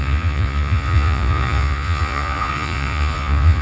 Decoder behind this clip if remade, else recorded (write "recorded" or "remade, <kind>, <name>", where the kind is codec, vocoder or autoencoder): remade, vocoder, Vocos